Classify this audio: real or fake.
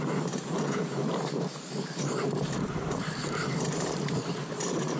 fake